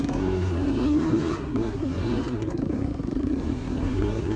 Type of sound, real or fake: fake